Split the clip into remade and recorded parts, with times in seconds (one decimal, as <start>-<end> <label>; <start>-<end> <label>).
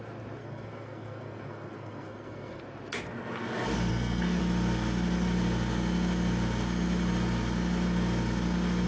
0.0-0.4 recorded; 0.4-2.6 remade; 2.6-3.9 recorded; 3.9-4.4 remade; 4.4-8.9 recorded